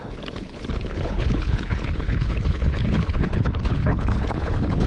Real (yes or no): no